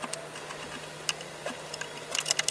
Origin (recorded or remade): recorded